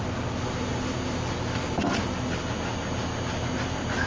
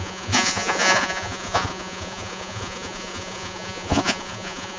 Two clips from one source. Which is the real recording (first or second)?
first